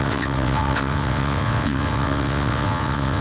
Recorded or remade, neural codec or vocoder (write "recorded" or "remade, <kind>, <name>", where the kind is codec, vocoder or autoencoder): remade, vocoder, WaveNeXt